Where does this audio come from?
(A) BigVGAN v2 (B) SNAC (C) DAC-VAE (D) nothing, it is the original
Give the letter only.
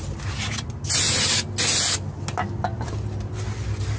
D